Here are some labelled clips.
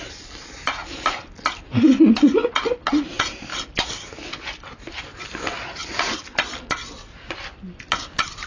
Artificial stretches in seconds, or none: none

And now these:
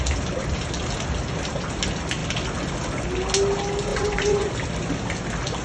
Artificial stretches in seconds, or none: 3.9-4.5

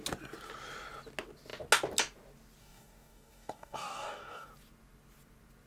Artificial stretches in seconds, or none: 2.6-4.5

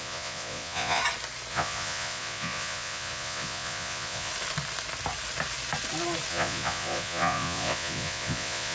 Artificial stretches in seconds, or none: 0.0-1.0; 1.5-4.3; 6.3-8.7

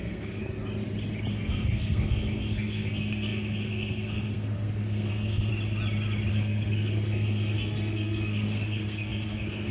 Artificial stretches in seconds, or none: 0.0-0.4; 1.3-5.5; 6.3-9.7

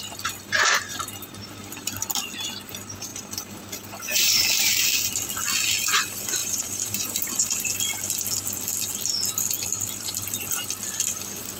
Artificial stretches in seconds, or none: 3.1-4.8; 6.4-7.3

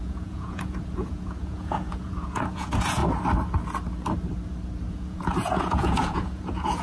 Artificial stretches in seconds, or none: 0.0-3.0; 4.9-6.8

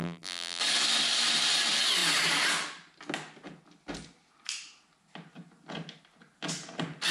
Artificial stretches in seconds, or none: 0.0-0.6